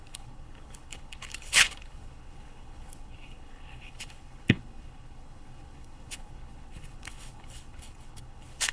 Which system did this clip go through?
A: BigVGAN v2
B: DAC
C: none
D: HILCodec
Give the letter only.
D